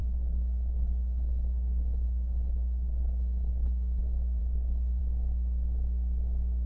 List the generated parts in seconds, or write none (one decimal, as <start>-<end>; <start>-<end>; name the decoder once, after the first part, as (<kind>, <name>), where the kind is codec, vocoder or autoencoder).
0.0-4.0 (codec, HILCodec); 4.4-5.0